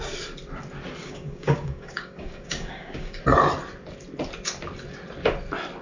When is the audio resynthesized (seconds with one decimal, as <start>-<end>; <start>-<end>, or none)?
1.0-3.2